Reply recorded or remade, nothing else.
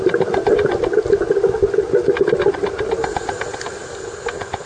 recorded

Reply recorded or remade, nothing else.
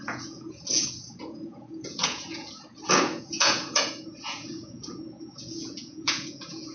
remade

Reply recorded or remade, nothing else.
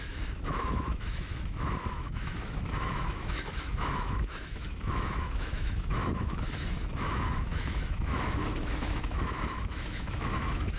remade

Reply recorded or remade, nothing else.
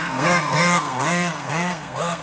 remade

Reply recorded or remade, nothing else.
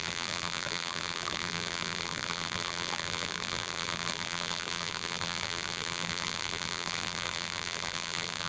remade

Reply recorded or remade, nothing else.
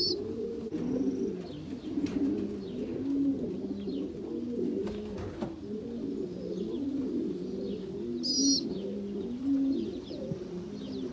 recorded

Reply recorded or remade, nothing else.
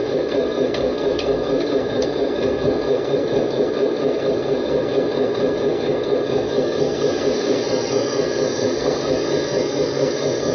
remade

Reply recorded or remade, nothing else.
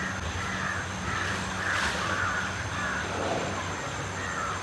recorded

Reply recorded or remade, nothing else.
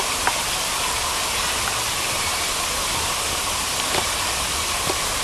recorded